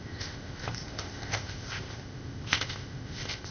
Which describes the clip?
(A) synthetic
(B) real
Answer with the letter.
A